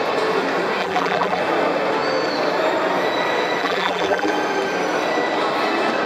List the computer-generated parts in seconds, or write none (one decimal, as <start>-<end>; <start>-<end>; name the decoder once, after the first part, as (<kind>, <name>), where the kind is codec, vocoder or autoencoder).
0.8-1.4 (vocoder, BigVGAN v2); 3.6-4.3